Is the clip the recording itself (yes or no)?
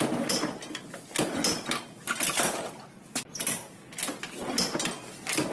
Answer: yes